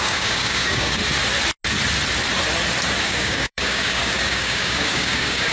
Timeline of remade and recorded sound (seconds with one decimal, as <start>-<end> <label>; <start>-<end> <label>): 0.0-1.0 remade; 1.0-3.0 recorded; 3.0-5.5 remade